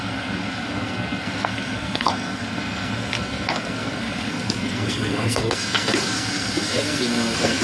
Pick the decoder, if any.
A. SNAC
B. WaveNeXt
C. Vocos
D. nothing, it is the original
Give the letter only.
A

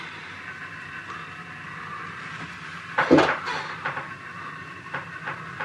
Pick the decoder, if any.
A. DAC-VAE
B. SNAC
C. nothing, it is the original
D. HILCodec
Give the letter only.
C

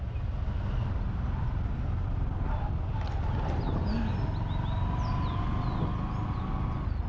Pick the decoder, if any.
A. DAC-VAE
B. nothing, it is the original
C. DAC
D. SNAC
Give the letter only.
B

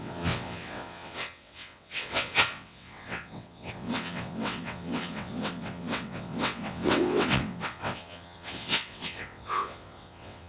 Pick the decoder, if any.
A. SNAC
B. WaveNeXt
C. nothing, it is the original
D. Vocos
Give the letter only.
B